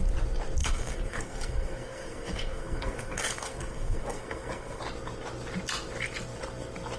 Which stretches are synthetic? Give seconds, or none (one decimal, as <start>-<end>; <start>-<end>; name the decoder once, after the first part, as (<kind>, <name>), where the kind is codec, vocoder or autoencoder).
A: 0.6-4.8 (codec, SNAC)

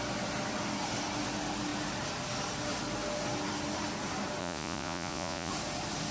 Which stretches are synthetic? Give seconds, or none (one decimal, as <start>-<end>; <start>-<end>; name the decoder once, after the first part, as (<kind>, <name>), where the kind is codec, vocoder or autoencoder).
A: 4.4-5.5 (vocoder, Vocos)

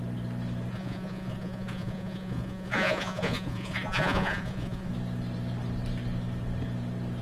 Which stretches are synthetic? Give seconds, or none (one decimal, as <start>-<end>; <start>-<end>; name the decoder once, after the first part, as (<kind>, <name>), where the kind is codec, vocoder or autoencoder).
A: 0.7-4.9 (vocoder, Vocos)

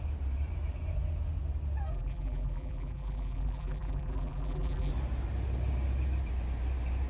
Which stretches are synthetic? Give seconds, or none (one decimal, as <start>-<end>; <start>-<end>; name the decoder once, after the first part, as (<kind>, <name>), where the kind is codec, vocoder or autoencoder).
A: 1.9-4.9 (vocoder, BigVGAN v2)

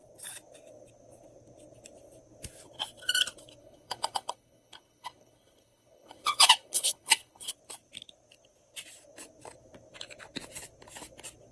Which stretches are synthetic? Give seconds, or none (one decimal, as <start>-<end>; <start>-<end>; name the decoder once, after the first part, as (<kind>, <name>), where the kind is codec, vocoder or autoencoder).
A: 3.6-7.5 (codec, HILCodec)

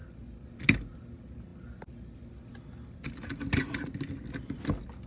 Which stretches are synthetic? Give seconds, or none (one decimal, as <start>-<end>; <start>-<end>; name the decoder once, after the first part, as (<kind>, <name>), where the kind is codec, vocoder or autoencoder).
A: none

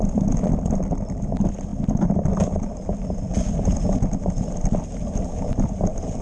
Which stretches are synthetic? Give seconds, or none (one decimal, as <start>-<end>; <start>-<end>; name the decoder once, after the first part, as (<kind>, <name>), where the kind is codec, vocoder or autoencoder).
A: none